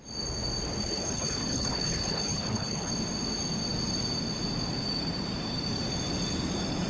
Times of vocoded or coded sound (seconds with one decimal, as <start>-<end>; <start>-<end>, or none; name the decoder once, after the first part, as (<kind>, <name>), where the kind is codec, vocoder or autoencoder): 0.8-2.9 (codec, HILCodec)